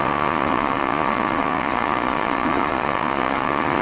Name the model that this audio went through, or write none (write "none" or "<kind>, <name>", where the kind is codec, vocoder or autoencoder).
vocoder, Vocos